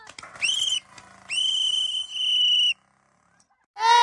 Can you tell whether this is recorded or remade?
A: recorded